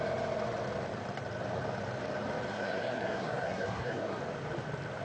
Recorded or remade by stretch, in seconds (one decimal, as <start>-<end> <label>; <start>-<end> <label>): 0.0-2.5 recorded; 2.5-4.2 remade; 4.2-5.0 recorded